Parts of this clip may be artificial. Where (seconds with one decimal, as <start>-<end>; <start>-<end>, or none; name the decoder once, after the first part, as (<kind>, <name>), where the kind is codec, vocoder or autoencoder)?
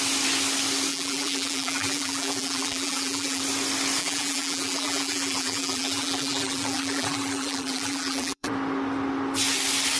0.9-3.4 (vocoder, BigVGAN v2); 4.0-8.5